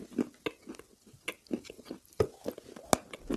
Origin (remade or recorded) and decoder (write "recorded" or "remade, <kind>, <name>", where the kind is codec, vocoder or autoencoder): recorded